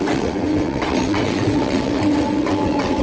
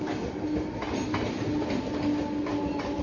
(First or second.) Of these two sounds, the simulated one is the first